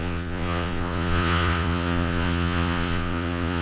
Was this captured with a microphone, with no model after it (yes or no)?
no